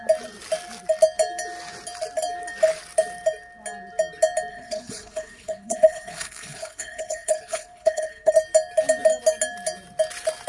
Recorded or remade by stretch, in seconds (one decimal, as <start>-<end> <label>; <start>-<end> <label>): 0.0-4.5 recorded; 4.5-8.3 remade; 8.3-10.5 recorded